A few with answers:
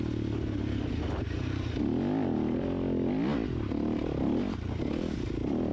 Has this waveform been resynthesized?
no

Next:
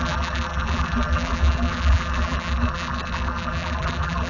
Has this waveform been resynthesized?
yes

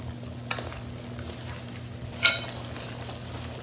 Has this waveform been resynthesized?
no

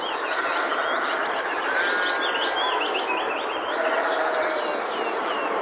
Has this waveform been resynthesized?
no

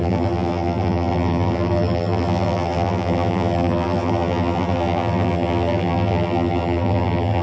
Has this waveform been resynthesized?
yes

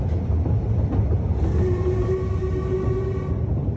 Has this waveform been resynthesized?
no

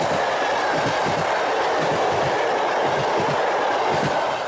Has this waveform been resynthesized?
no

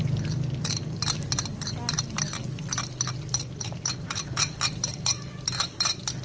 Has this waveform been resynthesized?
no